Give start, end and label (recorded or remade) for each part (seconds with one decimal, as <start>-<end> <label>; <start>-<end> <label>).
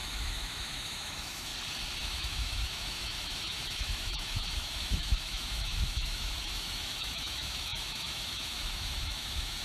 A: 0.0-1.5 remade; 1.5-2.0 recorded; 2.0-9.6 remade